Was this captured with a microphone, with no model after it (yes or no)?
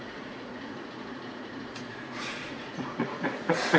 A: no